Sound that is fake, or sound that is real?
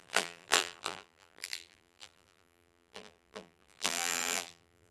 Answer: fake